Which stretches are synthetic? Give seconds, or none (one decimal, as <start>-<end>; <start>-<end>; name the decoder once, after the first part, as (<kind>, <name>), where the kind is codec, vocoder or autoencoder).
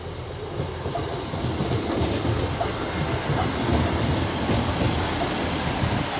none